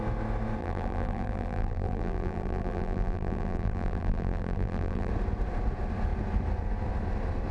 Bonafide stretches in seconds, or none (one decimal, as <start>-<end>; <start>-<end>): 0.0-0.6; 5.1-7.5